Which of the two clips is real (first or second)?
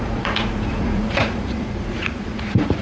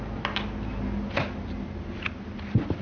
second